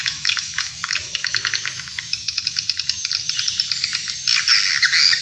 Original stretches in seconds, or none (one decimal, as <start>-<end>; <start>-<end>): 3.1-5.2